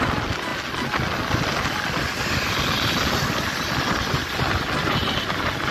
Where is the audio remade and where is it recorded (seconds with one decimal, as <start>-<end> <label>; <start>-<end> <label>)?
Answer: 0.0-5.7 recorded